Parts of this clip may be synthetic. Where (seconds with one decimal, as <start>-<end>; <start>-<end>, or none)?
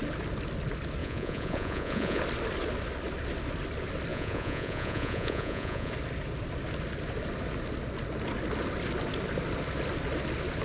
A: 1.0-2.2; 4.1-5.9